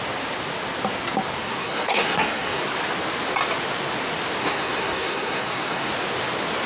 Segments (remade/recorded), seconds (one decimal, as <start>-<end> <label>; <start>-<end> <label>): 0.0-1.4 recorded; 1.4-2.6 remade; 2.6-4.4 recorded; 4.4-5.9 remade; 5.9-6.7 recorded

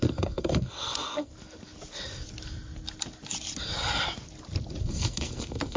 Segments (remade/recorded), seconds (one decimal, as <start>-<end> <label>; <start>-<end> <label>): 0.0-1.3 remade; 1.3-4.8 recorded; 4.8-5.8 remade